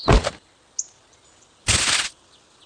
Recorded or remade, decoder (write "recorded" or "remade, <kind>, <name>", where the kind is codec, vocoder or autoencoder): recorded